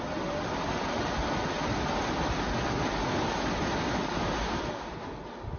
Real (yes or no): yes